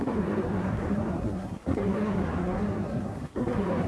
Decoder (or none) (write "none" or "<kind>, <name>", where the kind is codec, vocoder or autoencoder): codec, SNAC